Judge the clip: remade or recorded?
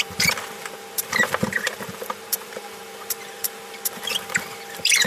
remade